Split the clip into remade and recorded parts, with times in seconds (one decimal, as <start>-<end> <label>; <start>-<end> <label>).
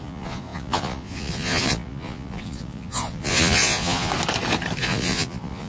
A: 0.0-4.1 remade; 4.1-4.8 recorded; 4.8-5.7 remade